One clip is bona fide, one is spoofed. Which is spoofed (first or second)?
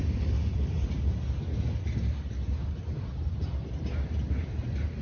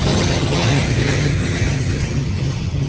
second